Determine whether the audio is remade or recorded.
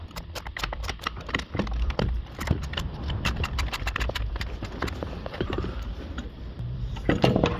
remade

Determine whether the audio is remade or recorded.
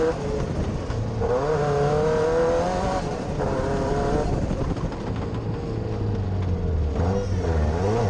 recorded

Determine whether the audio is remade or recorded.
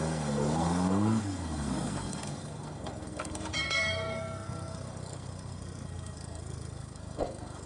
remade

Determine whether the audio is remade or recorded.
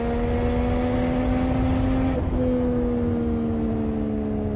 recorded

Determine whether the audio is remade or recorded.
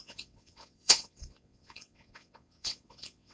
remade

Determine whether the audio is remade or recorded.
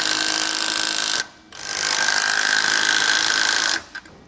recorded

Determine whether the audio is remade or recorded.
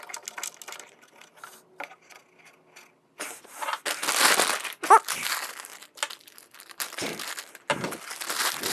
recorded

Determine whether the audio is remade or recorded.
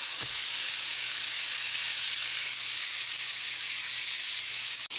remade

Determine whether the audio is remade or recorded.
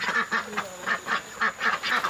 recorded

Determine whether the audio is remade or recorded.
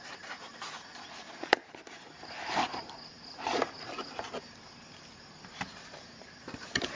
remade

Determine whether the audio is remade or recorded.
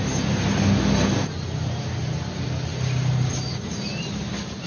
recorded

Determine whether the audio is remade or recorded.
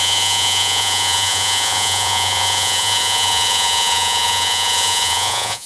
remade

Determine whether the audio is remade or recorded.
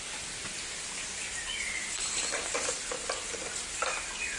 recorded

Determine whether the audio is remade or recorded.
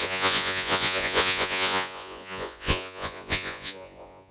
remade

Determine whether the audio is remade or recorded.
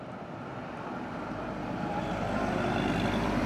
recorded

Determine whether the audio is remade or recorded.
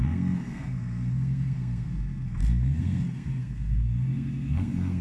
remade